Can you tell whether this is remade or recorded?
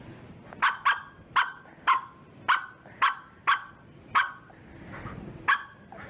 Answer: recorded